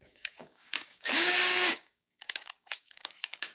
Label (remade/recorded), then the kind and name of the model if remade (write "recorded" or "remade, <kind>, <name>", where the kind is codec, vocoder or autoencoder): remade, codec, DAC